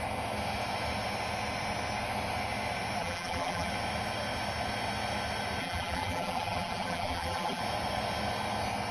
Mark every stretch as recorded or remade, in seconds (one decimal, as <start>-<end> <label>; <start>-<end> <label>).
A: 0.0-3.0 recorded; 3.0-3.7 remade; 3.7-5.6 recorded; 5.6-7.6 remade; 7.6-8.9 recorded